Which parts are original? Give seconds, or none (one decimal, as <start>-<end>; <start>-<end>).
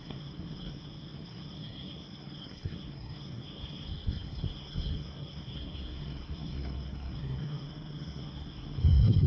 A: none